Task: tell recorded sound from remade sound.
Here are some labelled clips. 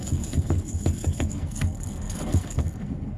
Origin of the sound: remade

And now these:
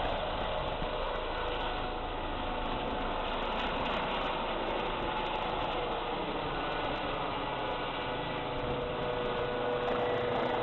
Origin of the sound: recorded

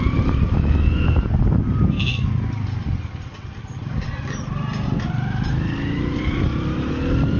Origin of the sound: recorded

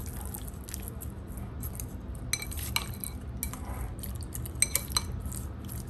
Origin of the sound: recorded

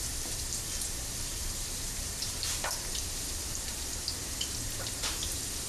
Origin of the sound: remade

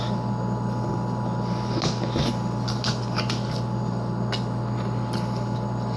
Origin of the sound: recorded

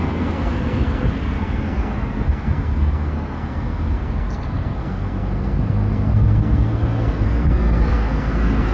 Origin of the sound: remade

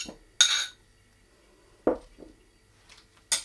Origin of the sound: recorded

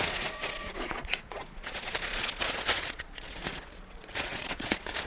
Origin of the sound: remade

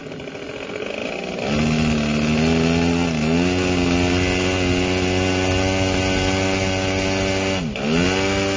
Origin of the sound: recorded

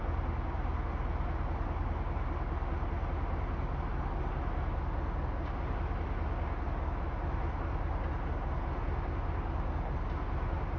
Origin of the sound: recorded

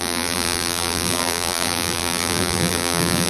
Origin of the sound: remade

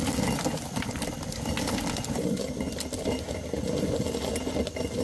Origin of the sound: recorded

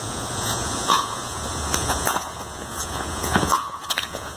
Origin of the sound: remade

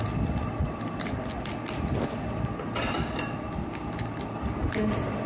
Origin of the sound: recorded